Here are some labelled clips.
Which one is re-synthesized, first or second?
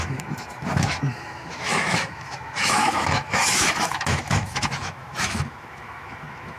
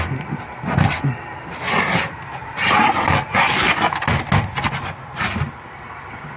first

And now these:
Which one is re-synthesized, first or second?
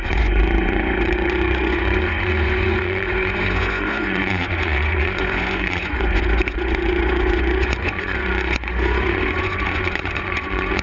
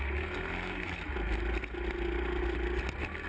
first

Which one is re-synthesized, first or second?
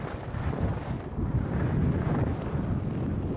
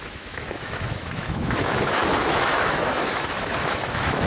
second